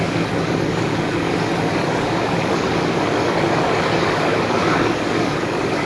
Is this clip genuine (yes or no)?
no